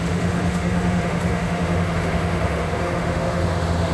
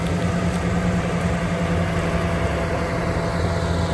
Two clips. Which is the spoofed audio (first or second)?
first